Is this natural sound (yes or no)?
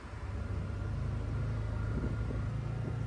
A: yes